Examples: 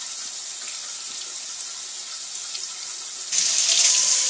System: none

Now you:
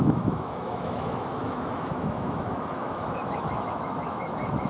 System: autoencoder, DAC-VAE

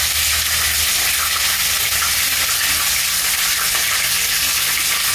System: none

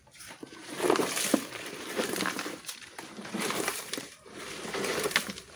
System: vocoder, BigVGAN v2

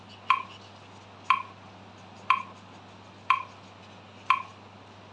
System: none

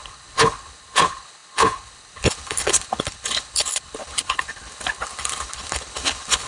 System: codec, HILCodec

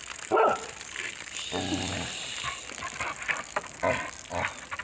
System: none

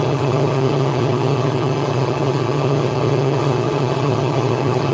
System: vocoder, HiFi-GAN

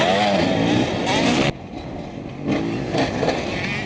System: none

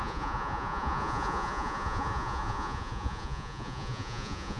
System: vocoder, Vocos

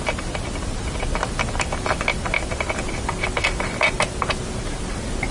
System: none